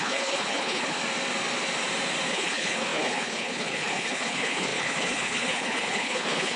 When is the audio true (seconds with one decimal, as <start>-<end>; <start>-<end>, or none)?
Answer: 1.0-2.3